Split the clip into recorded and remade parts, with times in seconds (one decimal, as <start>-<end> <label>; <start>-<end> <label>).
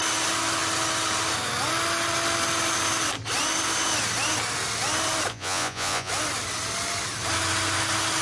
0.0-5.3 recorded; 5.3-6.1 remade; 6.1-8.2 recorded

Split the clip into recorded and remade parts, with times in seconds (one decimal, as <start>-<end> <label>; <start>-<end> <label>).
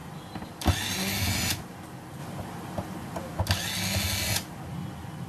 0.0-5.3 recorded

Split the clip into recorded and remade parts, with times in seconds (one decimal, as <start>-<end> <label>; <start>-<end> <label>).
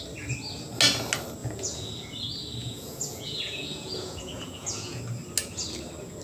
0.0-1.4 recorded; 1.4-1.9 remade; 1.9-2.6 recorded; 2.6-5.0 remade; 5.0-6.2 recorded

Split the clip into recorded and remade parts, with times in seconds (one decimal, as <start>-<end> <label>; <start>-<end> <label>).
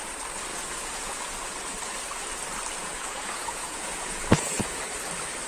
0.0-0.5 recorded; 0.5-1.2 remade; 1.2-2.8 recorded; 2.8-4.8 remade; 4.8-5.5 recorded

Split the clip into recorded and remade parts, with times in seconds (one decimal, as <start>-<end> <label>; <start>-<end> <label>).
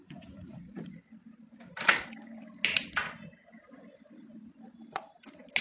0.0-0.8 remade; 0.8-5.6 recorded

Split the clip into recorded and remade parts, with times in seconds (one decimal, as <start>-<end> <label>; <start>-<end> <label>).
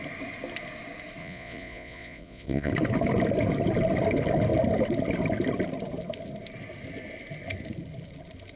0.0-1.2 recorded; 1.2-2.7 remade; 2.7-8.6 recorded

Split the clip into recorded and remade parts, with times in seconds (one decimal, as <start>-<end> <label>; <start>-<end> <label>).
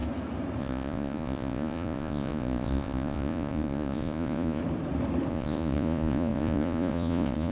0.0-0.6 recorded; 0.6-4.6 remade; 4.6-5.3 recorded; 5.3-7.5 remade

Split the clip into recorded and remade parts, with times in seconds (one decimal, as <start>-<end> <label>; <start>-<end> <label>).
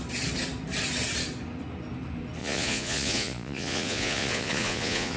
0.0-2.4 recorded; 2.4-5.2 remade